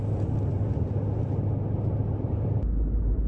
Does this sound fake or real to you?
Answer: real